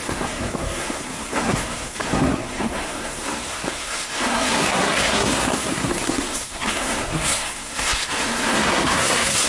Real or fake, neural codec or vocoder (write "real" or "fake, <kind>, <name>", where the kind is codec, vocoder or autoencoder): fake, codec, SNAC